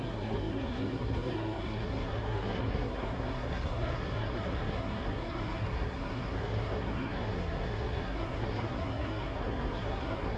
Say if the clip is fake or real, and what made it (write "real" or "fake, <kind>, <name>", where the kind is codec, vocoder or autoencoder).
fake, codec, SNAC